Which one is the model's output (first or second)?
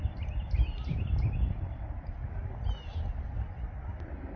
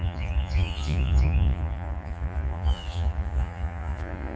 second